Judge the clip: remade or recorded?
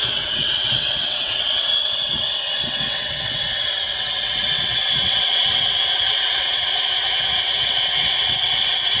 remade